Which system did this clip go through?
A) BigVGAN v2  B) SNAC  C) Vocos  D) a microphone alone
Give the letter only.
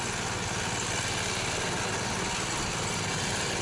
D